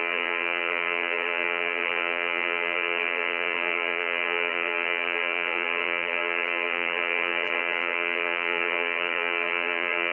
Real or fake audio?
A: fake